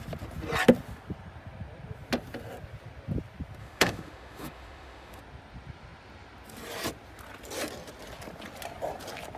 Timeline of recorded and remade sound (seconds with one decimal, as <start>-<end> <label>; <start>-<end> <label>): 0.0-3.6 recorded; 3.6-5.2 remade; 5.2-9.4 recorded